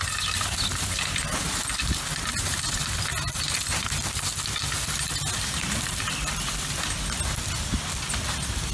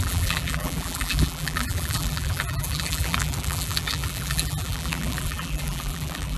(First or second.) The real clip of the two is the first